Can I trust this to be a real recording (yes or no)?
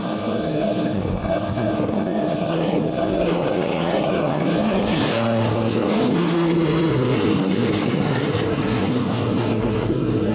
no